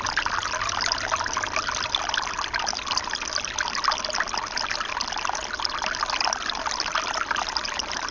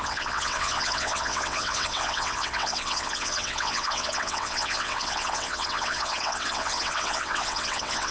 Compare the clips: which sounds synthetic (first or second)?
second